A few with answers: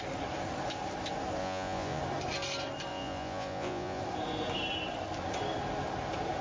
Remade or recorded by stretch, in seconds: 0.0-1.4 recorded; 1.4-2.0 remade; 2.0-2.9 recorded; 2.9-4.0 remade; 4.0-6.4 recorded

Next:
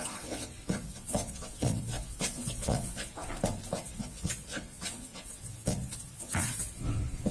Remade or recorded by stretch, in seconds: 0.0-3.3 remade; 3.3-3.8 recorded; 3.8-7.3 remade